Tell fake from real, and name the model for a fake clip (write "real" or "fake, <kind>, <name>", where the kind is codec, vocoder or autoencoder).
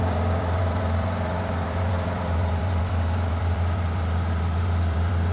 fake, vocoder, BigVGAN v2